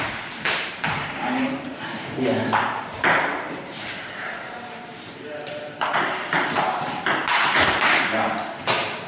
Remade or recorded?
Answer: remade